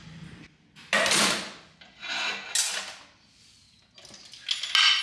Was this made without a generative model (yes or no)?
yes